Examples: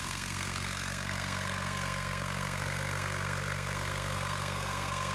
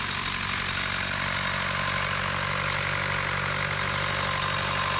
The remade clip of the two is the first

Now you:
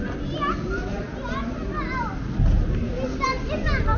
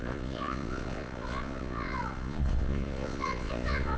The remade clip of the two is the second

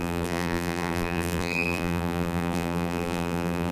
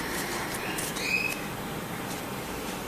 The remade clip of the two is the first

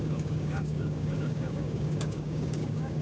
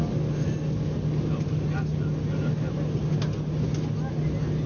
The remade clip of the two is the first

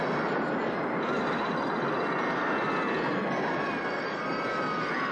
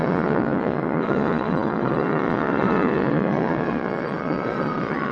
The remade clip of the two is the second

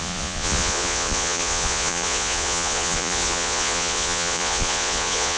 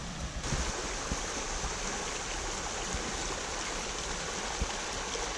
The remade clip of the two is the first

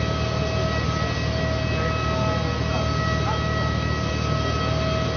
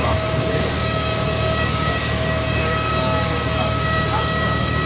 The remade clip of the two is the second